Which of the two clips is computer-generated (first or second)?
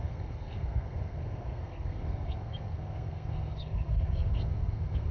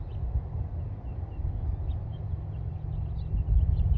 first